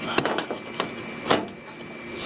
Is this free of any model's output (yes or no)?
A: yes